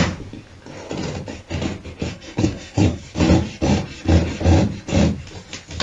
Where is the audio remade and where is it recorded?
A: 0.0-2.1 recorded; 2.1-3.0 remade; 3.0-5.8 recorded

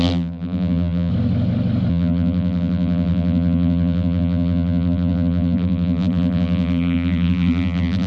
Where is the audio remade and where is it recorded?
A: 0.0-1.1 remade; 1.1-1.9 recorded; 1.9-8.1 remade

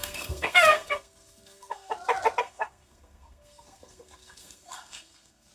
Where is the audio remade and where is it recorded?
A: 0.0-1.9 remade; 1.9-2.4 recorded; 2.4-5.5 remade

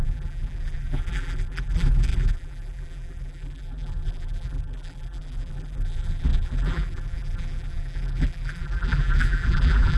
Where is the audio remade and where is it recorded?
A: 0.0-10.0 remade

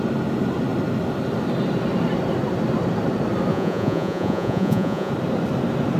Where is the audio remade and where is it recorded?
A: 0.0-3.5 recorded; 3.5-5.1 remade; 5.1-6.0 recorded

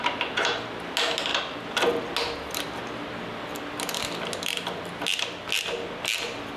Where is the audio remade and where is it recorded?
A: 0.0-6.6 recorded